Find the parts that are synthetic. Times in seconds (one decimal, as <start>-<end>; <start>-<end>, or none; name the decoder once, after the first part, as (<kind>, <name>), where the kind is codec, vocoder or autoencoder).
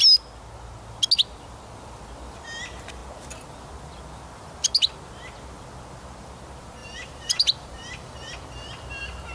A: 6.8-8.4 (vocoder, BigVGAN v2)